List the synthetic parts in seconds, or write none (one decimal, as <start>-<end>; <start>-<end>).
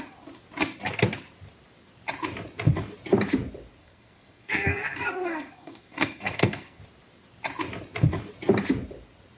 3.8-6.8